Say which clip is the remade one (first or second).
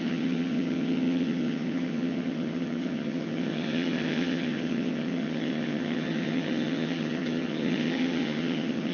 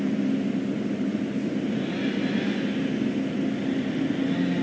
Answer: first